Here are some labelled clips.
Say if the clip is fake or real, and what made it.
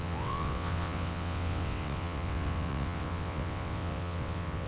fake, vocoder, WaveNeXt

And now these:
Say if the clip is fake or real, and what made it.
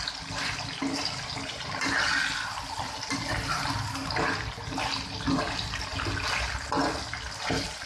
real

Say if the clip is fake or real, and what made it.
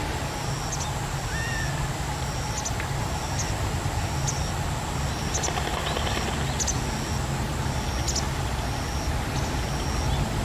real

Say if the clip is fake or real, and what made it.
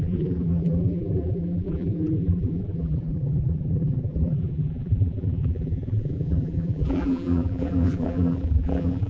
fake, vocoder, BigVGAN v2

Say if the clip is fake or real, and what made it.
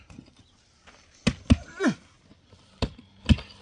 real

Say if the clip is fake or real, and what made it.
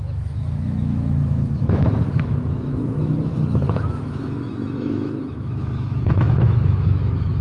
fake, autoencoder, DAC-VAE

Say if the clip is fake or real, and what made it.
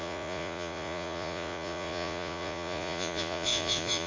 fake, vocoder, Vocos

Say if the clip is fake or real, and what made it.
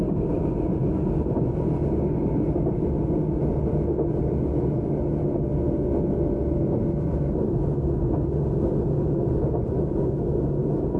real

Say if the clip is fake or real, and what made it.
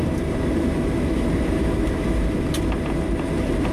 real